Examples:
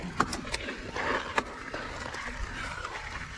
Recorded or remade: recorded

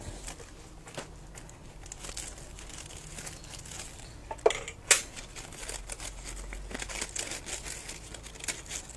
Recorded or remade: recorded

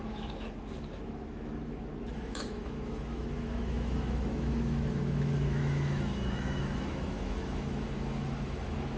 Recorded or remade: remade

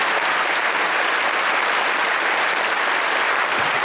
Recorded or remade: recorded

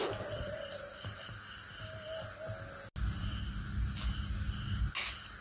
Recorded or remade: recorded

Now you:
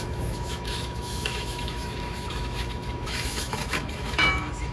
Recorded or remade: remade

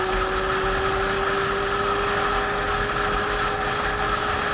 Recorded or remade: recorded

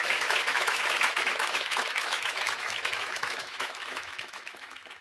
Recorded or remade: remade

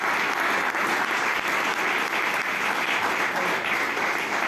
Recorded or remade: recorded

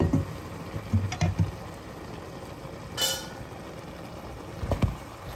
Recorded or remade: recorded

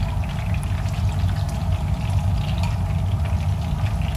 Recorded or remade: recorded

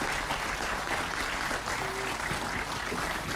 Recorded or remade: recorded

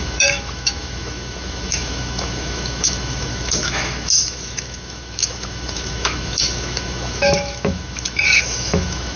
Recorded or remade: remade